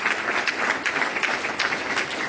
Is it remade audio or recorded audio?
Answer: recorded